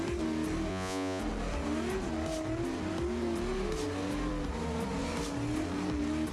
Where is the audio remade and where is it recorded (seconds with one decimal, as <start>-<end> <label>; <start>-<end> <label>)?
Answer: 0.0-0.7 recorded; 0.7-1.2 remade; 1.2-6.3 recorded